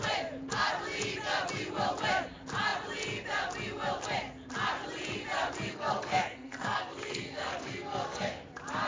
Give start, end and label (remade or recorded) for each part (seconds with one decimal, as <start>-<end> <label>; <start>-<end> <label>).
0.0-5.7 recorded; 5.7-8.4 remade; 8.4-8.9 recorded